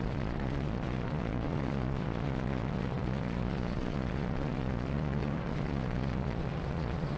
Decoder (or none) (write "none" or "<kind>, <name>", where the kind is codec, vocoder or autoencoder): vocoder, Vocos